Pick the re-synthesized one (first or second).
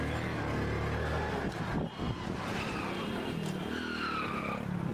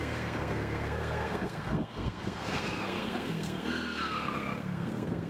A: second